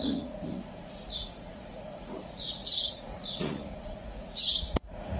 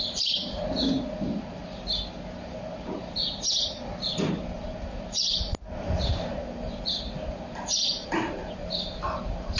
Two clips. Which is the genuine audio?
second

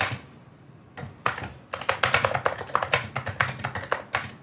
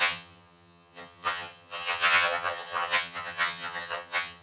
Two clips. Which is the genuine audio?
first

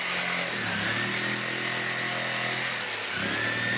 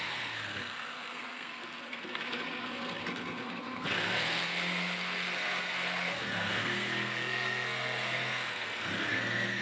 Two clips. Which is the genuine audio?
first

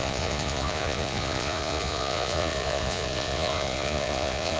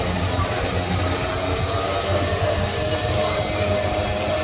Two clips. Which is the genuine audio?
second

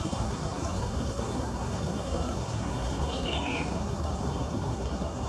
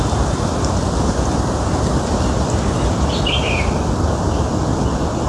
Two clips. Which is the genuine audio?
second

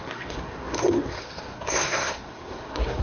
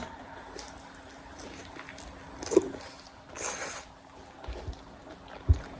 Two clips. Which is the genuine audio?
second